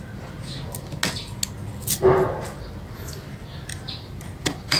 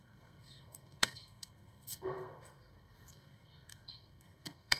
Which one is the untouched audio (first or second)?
first